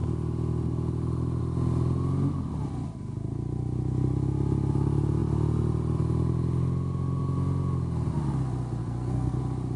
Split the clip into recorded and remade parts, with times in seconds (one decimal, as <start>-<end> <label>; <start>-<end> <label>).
0.0-8.8 recorded; 8.8-9.4 remade; 9.4-9.8 recorded